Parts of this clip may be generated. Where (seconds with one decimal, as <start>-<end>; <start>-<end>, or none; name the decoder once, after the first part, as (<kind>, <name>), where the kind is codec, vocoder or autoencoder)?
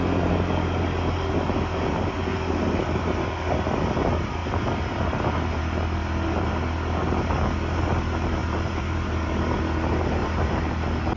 8.4-9.6 (vocoder, BigVGAN v2); 10.2-10.7